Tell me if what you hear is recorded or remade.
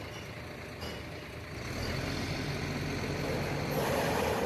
recorded